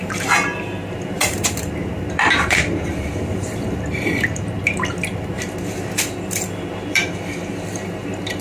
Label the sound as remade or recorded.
remade